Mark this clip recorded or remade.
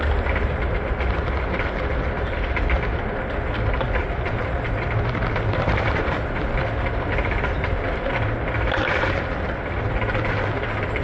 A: recorded